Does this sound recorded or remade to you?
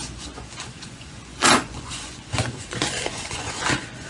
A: remade